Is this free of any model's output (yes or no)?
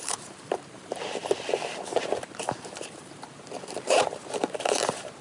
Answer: no